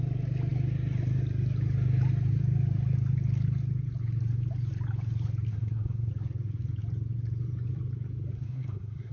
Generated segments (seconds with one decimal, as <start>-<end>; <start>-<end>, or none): 5.5-6.1; 8.3-9.1